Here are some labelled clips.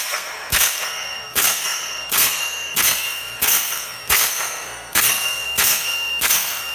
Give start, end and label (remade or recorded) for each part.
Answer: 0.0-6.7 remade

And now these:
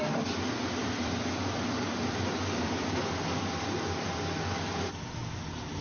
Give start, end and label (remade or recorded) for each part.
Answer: 0.0-0.8 recorded; 0.8-4.3 remade; 4.3-5.8 recorded

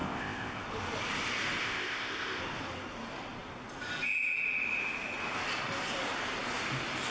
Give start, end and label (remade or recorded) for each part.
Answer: 0.0-0.6 remade; 0.6-1.6 recorded; 1.6-2.4 remade; 2.4-7.1 recorded

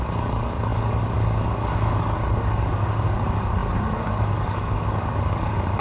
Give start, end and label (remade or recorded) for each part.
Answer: 0.0-5.8 remade

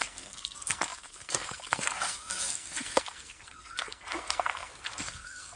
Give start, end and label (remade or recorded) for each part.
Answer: 0.0-5.6 remade

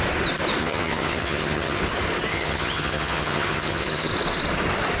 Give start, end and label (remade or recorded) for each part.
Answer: 0.0-0.6 recorded; 0.6-1.8 remade; 1.8-2.3 recorded; 2.3-4.1 remade; 4.1-5.0 recorded

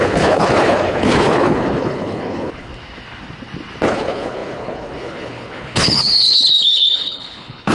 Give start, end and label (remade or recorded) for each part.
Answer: 0.0-2.7 remade; 2.7-3.9 recorded; 3.9-7.7 remade

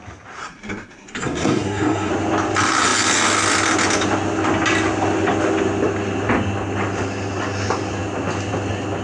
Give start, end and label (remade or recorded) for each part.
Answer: 0.0-0.4 recorded; 0.4-2.1 remade; 2.1-9.0 recorded